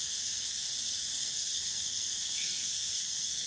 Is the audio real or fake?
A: fake